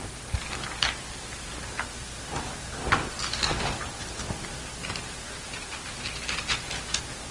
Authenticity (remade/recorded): recorded